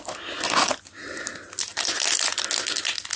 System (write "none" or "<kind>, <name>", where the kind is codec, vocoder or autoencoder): none